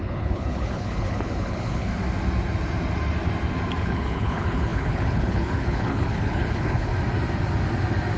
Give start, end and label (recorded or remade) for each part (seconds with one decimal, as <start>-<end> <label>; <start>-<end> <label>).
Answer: 0.0-1.9 remade; 1.9-3.8 recorded; 3.8-6.9 remade; 6.9-8.2 recorded